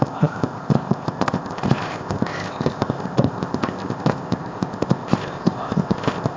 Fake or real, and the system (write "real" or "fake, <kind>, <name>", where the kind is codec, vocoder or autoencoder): fake, codec, ZipCodec